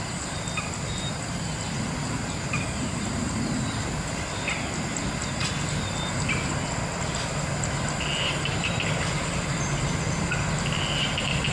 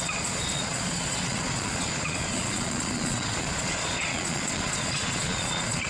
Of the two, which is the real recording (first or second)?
first